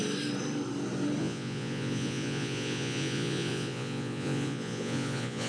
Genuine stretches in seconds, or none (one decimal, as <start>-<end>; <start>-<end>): 0.0-1.2